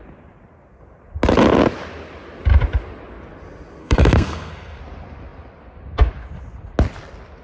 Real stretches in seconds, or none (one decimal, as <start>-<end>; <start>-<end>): 0.0-3.8; 4.8-7.4